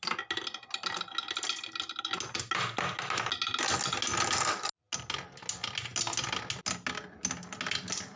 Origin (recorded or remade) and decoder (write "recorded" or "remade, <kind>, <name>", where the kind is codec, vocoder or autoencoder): recorded